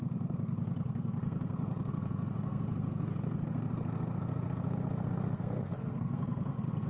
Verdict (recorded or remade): remade